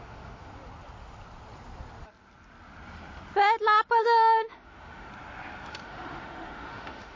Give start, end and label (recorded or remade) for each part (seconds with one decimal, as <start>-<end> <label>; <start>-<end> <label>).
0.0-0.5 remade; 0.5-4.0 recorded; 4.0-5.1 remade; 5.1-5.7 recorded; 5.7-7.2 remade